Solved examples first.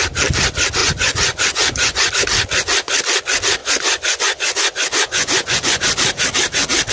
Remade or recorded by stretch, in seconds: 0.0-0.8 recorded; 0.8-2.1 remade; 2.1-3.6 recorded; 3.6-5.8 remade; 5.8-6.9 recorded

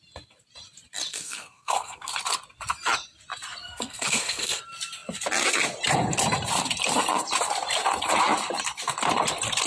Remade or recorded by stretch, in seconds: 0.0-1.1 recorded; 1.1-2.1 remade; 2.1-3.6 recorded; 3.6-4.6 remade; 4.6-9.7 recorded

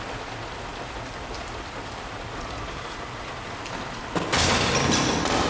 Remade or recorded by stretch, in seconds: 0.0-0.7 recorded; 0.7-4.0 remade; 4.0-5.5 recorded

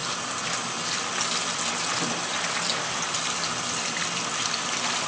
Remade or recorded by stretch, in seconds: 0.0-5.1 recorded

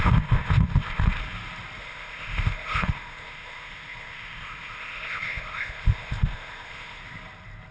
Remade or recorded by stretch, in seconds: 0.0-1.2 remade; 1.2-1.8 recorded; 1.8-7.0 remade; 7.0-7.7 recorded